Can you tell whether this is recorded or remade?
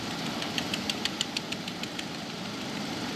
remade